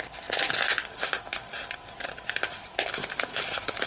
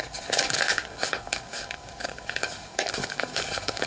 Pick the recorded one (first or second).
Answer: first